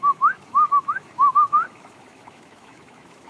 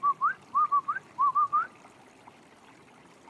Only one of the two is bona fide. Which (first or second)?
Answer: second